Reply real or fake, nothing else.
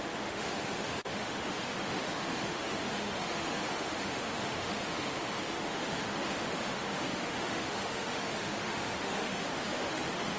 fake